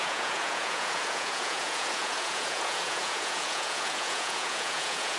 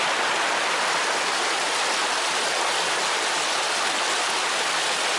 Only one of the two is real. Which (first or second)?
second